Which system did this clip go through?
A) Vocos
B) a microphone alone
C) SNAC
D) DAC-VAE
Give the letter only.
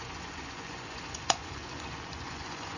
A